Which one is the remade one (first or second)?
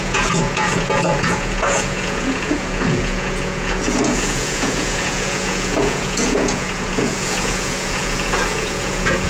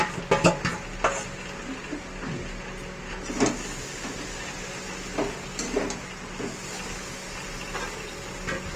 first